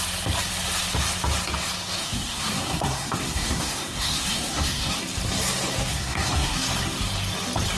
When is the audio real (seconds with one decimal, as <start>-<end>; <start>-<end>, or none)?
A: 0.0-2.0; 5.0-5.9; 6.6-7.8